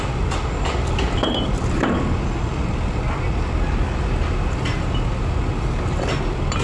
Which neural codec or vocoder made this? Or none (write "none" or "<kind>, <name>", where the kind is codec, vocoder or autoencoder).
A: none